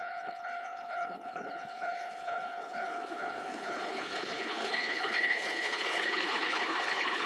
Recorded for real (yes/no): no